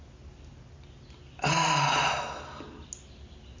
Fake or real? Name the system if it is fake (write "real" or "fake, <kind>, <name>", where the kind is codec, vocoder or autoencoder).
real